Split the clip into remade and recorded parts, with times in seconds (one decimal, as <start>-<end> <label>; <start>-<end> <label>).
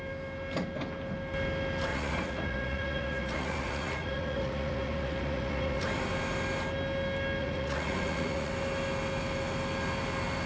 0.0-1.9 recorded; 1.9-5.8 remade; 5.8-7.4 recorded; 7.4-8.5 remade; 8.5-10.5 recorded